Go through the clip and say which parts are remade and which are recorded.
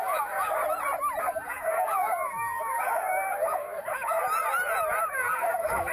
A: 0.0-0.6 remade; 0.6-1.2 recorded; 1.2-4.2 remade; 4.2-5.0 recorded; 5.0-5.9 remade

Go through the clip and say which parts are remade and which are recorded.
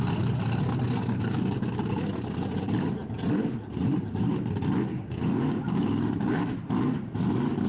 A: 0.0-1.0 recorded; 1.0-1.8 remade; 1.8-4.9 recorded; 4.9-6.5 remade; 6.5-7.7 recorded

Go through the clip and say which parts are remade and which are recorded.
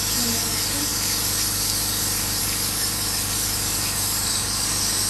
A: 0.0-5.1 remade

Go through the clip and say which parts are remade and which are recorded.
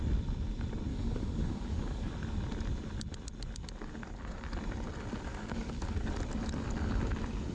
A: 0.0-0.9 recorded; 0.9-2.1 remade; 2.1-5.3 recorded; 5.3-6.1 remade; 6.1-7.5 recorded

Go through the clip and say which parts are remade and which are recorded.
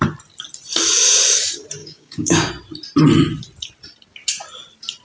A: 0.0-1.8 recorded; 1.8-2.5 remade; 2.5-5.0 recorded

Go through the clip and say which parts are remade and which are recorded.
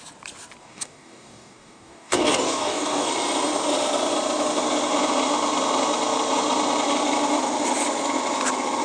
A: 0.0-0.6 recorded; 0.6-3.1 remade; 3.1-8.8 recorded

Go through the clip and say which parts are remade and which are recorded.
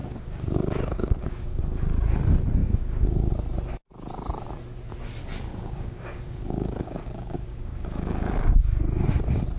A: 0.0-1.6 remade; 1.6-2.6 recorded; 2.6-3.3 remade; 3.3-5.5 recorded; 5.5-8.6 remade; 8.6-9.6 recorded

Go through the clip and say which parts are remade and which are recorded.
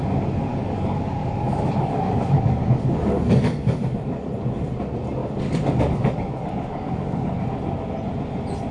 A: 0.0-0.5 recorded; 0.5-4.3 remade; 4.3-5.2 recorded; 5.2-7.4 remade; 7.4-8.7 recorded